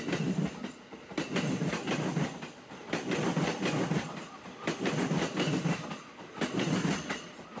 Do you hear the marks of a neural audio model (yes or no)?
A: no